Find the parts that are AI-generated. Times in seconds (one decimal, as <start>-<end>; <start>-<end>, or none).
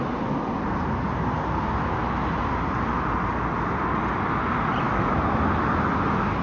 none